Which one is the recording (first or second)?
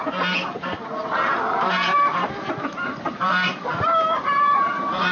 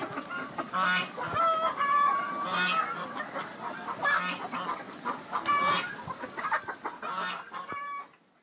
second